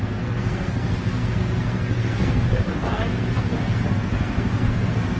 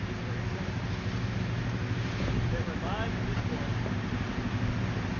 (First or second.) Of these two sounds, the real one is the second